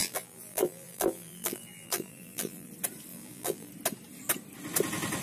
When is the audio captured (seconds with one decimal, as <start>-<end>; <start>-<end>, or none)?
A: 2.7-3.1; 3.7-5.2